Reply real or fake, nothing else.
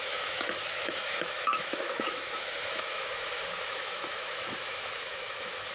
fake